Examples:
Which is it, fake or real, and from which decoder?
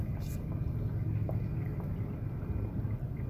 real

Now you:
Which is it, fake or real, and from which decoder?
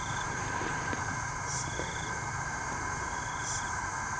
fake, vocoder, BigVGAN v2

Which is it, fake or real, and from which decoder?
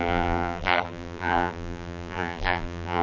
fake, vocoder, BigVGAN v2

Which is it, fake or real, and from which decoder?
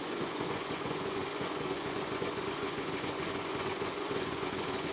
fake, vocoder, Vocos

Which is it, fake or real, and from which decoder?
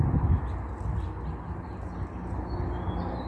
real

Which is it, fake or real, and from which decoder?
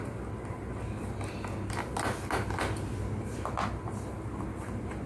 real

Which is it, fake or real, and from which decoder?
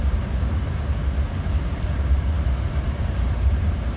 fake, vocoder, BigVGAN v2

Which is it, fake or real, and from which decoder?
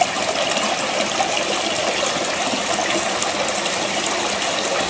real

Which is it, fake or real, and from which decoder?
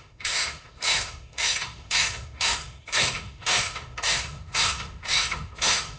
fake, autoencoder, DAC-VAE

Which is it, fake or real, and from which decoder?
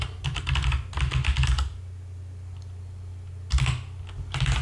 real